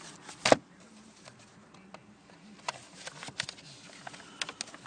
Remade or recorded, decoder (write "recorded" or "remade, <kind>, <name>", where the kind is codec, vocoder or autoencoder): recorded